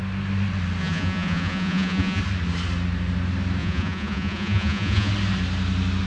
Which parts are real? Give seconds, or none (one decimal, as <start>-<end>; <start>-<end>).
0.0-0.8; 2.2-3.6; 5.1-6.1